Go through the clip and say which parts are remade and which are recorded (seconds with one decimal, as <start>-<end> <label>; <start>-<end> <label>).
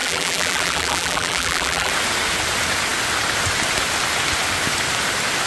0.0-1.9 remade; 1.9-5.5 recorded